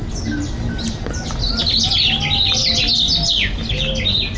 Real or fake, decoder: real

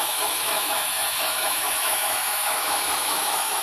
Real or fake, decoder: fake, autoencoder, DAC-VAE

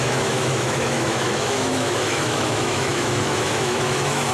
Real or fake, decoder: fake, autoencoder, DAC-VAE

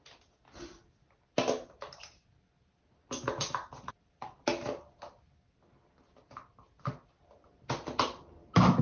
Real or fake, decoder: real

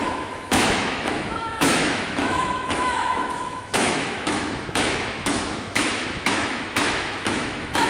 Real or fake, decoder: fake, autoencoder, DAC-VAE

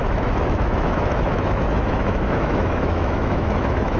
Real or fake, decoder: fake, autoencoder, DAC-VAE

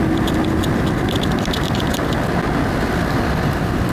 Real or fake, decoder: real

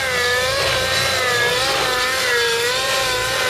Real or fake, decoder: real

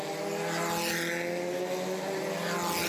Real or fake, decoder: real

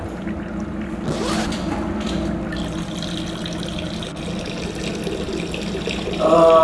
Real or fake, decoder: real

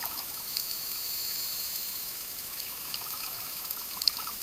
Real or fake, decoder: fake, autoencoder, DAC-VAE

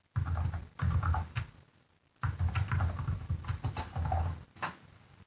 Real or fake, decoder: real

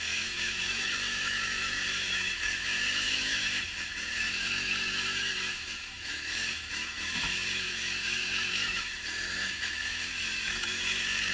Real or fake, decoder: fake, autoencoder, DAC-VAE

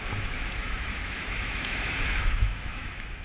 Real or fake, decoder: fake, autoencoder, DAC-VAE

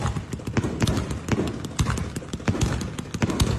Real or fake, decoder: real